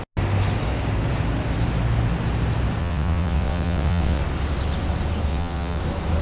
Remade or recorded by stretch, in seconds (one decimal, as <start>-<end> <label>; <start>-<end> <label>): 0.0-2.8 recorded; 2.8-4.2 remade; 4.2-5.3 recorded; 5.3-5.8 remade; 5.8-6.2 recorded